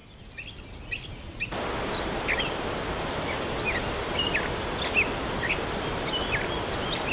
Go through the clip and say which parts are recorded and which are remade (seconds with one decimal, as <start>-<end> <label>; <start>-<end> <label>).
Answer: 0.0-7.1 recorded